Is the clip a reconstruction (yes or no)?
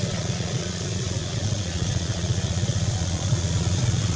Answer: yes